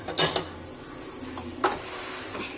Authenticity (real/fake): real